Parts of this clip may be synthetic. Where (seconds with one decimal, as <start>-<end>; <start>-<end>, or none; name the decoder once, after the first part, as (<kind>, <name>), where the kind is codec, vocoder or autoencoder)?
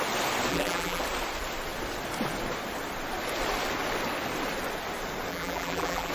0.5-1.0 (vocoder, BigVGAN v2); 5.3-6.1